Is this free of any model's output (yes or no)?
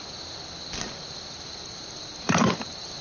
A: yes